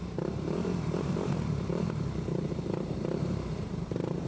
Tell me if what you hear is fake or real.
fake